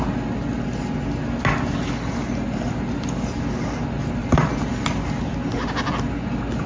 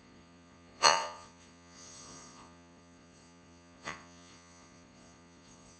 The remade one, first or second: second